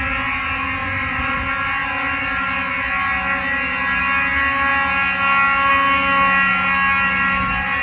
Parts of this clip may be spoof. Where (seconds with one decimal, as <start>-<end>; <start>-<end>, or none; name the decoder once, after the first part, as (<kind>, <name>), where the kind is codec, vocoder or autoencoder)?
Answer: 0.8-1.4 (vocoder, Vocos)